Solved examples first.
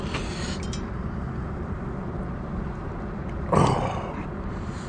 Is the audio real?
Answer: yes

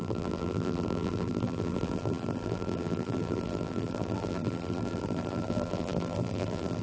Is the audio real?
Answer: no